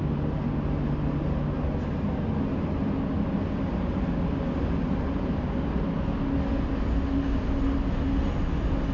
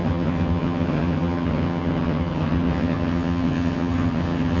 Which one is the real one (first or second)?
first